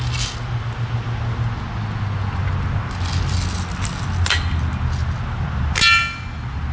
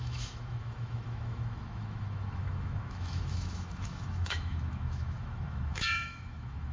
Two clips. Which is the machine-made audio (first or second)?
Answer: second